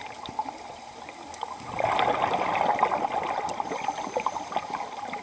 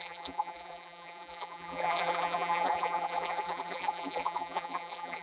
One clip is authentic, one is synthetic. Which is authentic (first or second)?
first